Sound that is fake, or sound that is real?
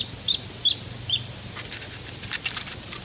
real